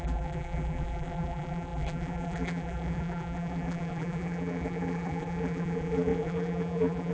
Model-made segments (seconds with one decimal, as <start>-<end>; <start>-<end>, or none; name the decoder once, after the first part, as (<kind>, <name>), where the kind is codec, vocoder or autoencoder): 0.0-7.1 (vocoder, BigVGAN v2)